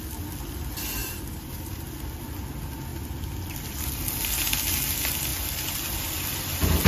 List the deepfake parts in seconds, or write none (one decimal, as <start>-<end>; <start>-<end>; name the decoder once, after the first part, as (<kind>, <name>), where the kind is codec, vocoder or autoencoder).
1.0-1.8 (vocoder, BigVGAN v2)